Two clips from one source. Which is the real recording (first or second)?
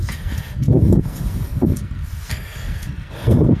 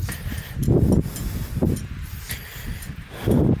second